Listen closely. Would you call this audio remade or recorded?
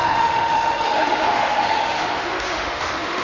remade